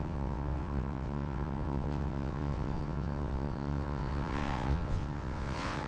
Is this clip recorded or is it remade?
remade